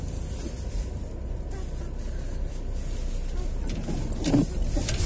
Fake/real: real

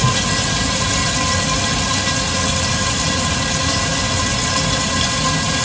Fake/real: real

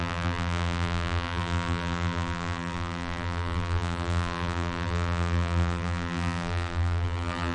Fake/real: fake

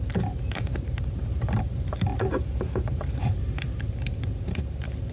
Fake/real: fake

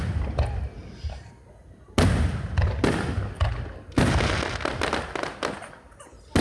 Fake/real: real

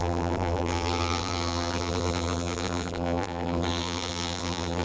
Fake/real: fake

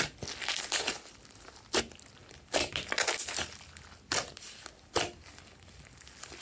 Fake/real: real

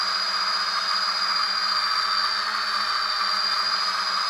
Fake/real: real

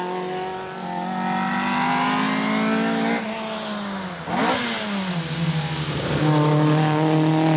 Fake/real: real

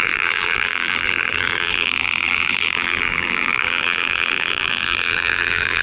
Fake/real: fake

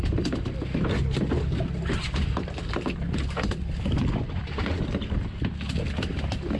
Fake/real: real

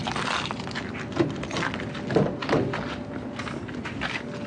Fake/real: real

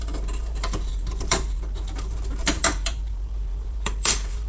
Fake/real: fake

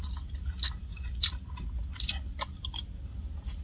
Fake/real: real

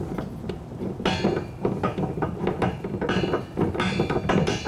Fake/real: real